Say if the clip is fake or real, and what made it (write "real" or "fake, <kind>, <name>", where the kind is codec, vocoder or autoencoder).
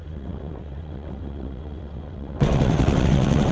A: fake, vocoder, WaveNeXt